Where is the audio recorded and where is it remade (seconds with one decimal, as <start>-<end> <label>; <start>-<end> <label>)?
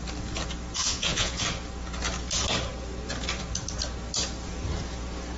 0.0-0.8 recorded; 0.8-1.4 remade; 1.4-5.4 recorded